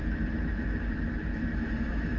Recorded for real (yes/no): no